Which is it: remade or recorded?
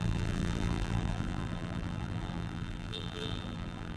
remade